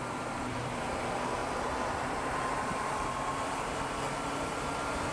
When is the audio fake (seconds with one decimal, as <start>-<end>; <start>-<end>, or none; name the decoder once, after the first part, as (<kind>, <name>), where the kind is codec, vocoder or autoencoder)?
0.0-1.4 (vocoder, BigVGAN v2); 4.5-5.1